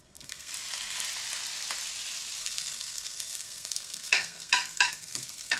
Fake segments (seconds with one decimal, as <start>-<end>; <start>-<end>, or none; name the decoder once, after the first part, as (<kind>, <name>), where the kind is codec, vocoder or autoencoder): 0.0-0.5 (codec, SNAC); 2.4-5.6